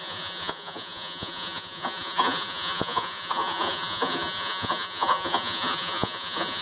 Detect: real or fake fake